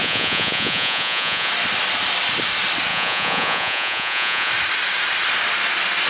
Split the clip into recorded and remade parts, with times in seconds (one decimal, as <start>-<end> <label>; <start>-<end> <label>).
0.0-1.5 remade; 1.5-2.9 recorded; 2.9-4.5 remade; 4.5-6.1 recorded